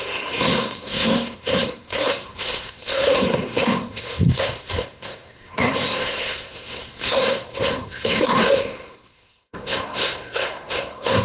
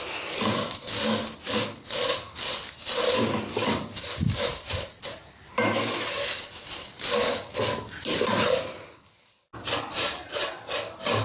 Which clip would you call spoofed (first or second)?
first